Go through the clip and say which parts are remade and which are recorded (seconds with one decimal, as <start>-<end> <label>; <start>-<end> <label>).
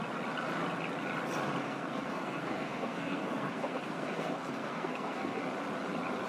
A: 0.0-1.6 recorded; 1.6-5.4 remade; 5.4-6.3 recorded